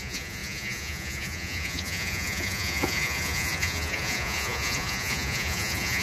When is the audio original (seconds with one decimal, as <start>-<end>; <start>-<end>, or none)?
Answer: none